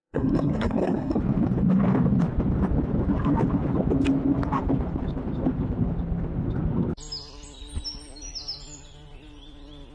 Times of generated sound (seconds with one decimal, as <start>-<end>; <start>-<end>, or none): 0.0-1.2

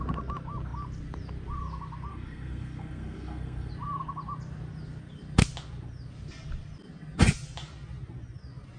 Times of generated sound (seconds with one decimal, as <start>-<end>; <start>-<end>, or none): 2.1-3.7

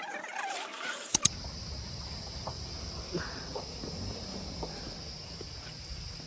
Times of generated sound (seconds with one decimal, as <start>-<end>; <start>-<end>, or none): none

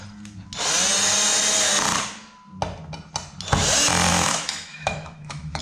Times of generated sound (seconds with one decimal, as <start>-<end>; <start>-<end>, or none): 4.1-5.6

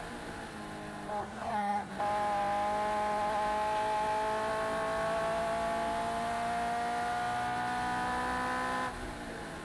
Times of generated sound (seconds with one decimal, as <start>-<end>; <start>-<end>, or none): 1.2-1.9

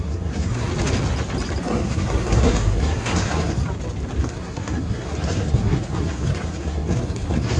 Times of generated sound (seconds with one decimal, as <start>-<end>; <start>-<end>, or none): 0.0-0.7; 1.6-3.6; 4.2-7.6

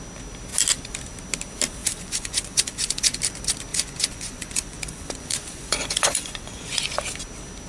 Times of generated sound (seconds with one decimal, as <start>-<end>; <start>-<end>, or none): 1.8-3.2; 3.7-7.0